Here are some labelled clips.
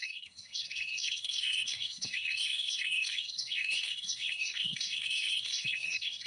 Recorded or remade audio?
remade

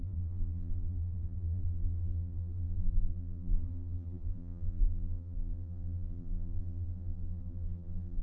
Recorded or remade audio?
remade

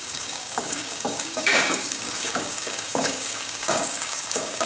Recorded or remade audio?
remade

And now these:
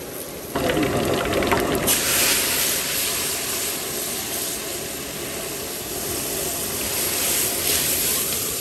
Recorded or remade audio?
recorded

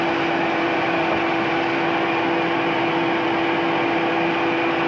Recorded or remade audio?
recorded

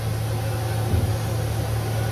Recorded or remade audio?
recorded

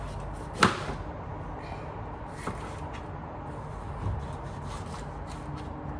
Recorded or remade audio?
recorded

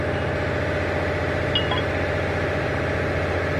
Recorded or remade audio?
recorded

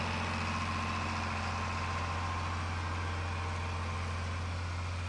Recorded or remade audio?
recorded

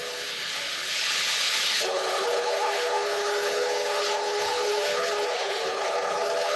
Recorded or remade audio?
remade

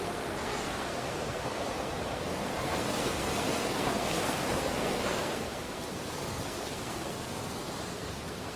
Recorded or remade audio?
remade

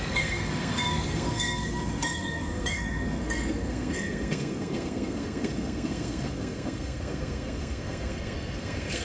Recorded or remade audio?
remade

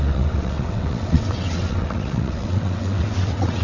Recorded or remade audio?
remade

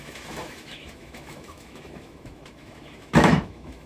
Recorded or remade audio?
remade